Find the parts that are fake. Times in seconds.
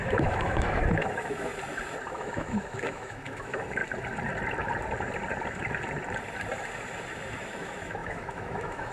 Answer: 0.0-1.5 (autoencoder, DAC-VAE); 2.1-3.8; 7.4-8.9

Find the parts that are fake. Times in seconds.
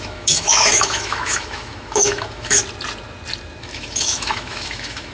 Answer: 0.0-2.6 (autoencoder, DAC-VAE); 3.6-5.1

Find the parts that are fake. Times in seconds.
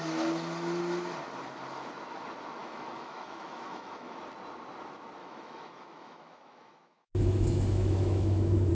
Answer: 2.6-4.2 (autoencoder, DAC-VAE); 5.2-8.7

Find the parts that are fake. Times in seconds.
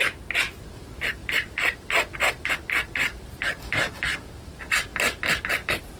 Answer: none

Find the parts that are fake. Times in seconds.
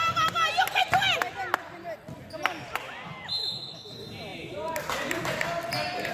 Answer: 3.4-3.9 (autoencoder, DAC-VAE)